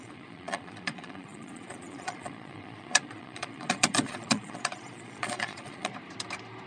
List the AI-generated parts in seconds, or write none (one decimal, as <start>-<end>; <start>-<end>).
0.0-5.9